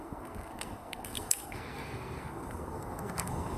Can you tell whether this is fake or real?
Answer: fake